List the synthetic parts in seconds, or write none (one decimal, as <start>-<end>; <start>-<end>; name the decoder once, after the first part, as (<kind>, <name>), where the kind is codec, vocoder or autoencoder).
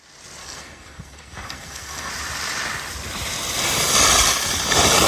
0.4-2.1 (codec, SNAC)